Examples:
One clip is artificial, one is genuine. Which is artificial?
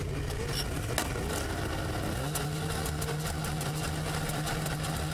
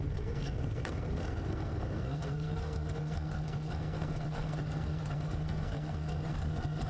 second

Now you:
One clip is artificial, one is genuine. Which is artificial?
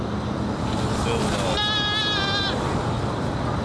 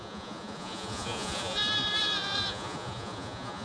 second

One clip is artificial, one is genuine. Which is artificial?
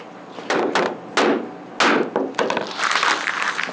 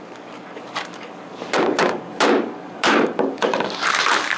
second